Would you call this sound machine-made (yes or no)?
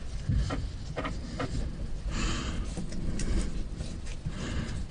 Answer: no